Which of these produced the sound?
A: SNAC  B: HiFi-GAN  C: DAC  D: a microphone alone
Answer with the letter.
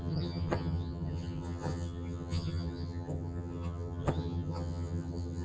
B